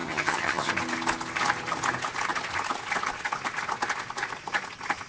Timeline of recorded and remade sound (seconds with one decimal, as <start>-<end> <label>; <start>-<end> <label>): 0.0-0.7 remade; 0.7-5.1 recorded